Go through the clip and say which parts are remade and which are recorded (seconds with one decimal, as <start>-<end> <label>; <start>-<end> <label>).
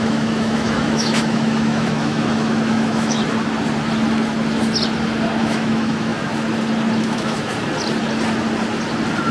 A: 0.0-3.2 remade; 3.2-5.4 recorded; 5.4-6.1 remade; 6.1-7.0 recorded; 7.0-7.5 remade; 7.5-9.3 recorded